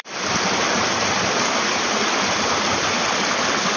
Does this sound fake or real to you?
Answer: real